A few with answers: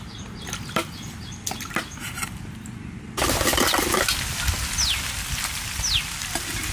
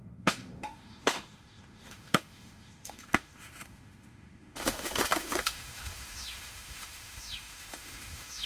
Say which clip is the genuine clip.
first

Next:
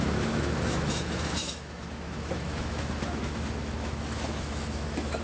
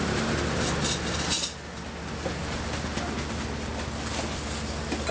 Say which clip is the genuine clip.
second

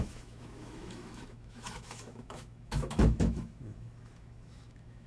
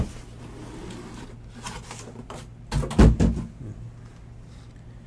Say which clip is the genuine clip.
second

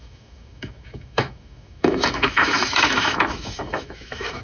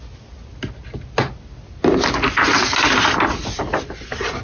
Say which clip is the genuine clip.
second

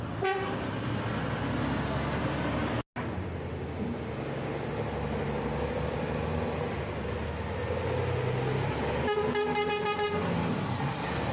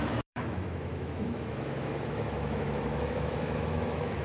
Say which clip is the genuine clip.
first